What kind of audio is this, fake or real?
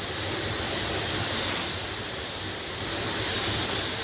real